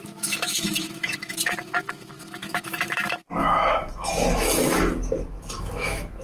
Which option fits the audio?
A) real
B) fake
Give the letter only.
B